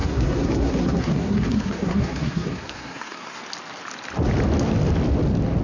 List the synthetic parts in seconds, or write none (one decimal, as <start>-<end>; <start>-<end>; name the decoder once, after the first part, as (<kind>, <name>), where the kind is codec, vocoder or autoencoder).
0.0-3.4 (codec, SNAC)